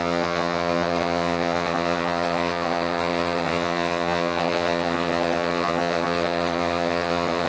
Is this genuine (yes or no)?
no